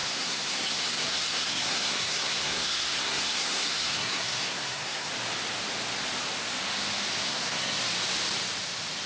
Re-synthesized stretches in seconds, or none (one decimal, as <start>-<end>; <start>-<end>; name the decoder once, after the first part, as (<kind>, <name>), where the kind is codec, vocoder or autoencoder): 0.0-5.1 (codec, SNAC); 7.2-7.8